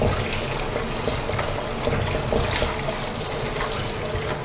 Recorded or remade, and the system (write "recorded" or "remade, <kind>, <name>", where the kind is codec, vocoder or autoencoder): recorded